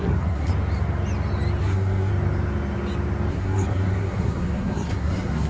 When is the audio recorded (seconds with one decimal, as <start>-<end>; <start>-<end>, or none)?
0.5-1.6; 2.1-3.3